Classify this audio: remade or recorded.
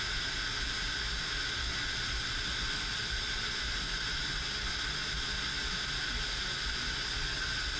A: recorded